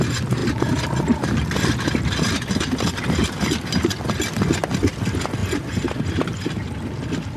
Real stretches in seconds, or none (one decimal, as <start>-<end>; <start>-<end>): 0.0-7.4